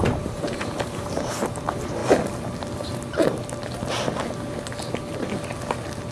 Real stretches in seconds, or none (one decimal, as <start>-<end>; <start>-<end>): 2.0-6.1

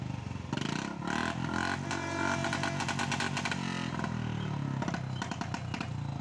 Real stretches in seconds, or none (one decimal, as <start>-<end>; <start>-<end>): 0.0-6.2

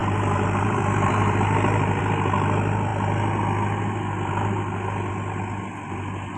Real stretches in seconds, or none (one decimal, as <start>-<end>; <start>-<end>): 2.0-6.4

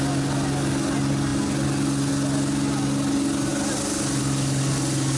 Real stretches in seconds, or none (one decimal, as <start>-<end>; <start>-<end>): 0.0-5.2

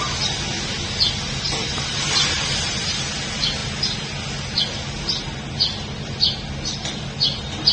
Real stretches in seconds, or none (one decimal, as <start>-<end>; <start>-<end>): 0.0-1.6; 3.1-7.7